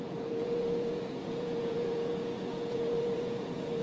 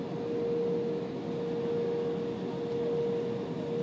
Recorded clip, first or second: second